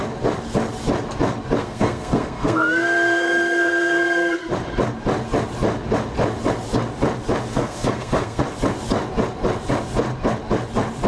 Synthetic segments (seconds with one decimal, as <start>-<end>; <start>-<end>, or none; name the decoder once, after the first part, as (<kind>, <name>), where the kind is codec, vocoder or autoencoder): 1.6-4.4 (codec, SNAC); 7.5-8.4